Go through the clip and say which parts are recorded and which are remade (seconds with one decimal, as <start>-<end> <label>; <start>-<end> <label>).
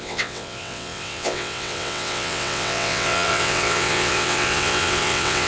0.0-5.5 remade